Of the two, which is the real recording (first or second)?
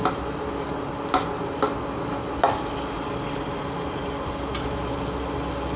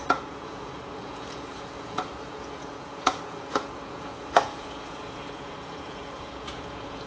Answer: first